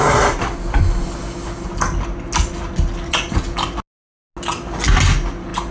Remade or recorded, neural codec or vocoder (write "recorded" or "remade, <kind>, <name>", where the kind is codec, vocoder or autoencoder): recorded